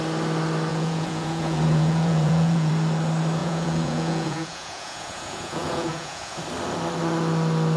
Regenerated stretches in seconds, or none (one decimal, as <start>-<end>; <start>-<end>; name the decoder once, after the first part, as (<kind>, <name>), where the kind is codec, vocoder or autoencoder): 0.7-2.7 (vocoder, Vocos); 3.4-6.4